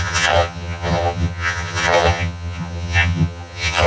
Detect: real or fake fake